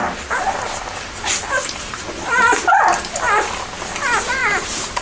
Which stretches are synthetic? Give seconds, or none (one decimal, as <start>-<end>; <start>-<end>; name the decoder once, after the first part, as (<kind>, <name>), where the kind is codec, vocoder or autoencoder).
0.0-3.0 (vocoder, BigVGAN v2); 4.4-5.0